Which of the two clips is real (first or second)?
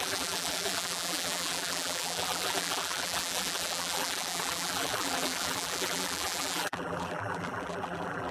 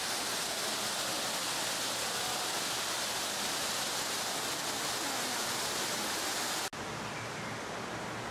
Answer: second